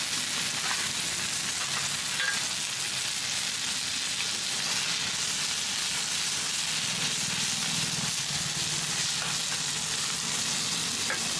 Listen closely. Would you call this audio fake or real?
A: real